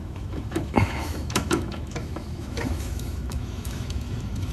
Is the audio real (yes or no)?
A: no